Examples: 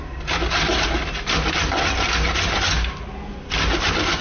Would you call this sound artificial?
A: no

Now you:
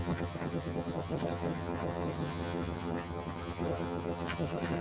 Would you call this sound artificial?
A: yes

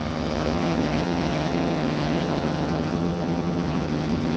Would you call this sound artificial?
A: yes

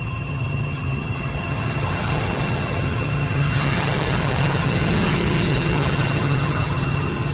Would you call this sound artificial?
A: yes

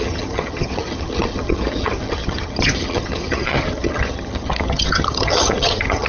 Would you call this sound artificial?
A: yes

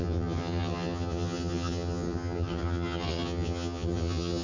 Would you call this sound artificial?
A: yes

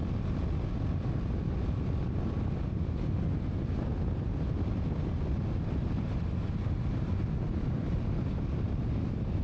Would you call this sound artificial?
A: no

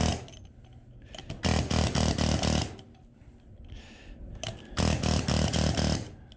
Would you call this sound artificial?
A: no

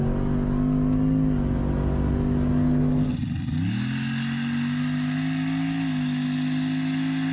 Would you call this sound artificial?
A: no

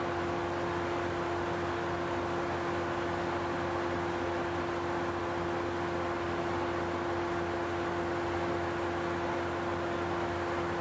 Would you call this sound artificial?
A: no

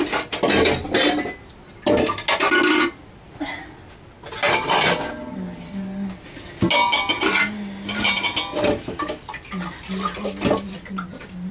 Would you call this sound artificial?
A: no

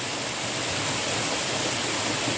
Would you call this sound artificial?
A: no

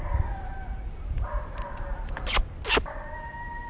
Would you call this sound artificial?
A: no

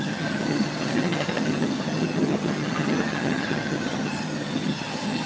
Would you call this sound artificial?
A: yes